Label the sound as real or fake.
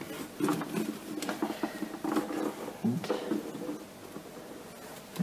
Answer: real